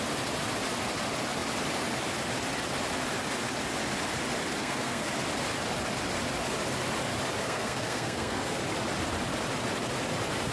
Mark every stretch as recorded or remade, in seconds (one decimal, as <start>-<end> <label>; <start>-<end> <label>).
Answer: 0.0-4.6 recorded; 4.6-5.1 remade; 5.1-7.4 recorded; 7.4-8.6 remade; 8.6-10.5 recorded